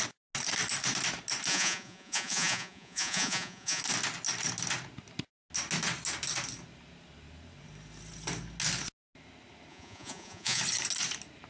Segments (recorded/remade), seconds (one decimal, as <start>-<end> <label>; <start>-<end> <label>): 0.0-1.5 recorded; 1.5-3.8 remade; 3.8-9.7 recorded; 9.7-10.6 remade; 10.6-11.5 recorded